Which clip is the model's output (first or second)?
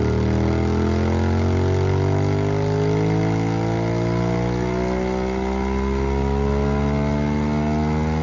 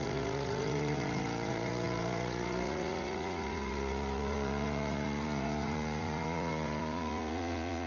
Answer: second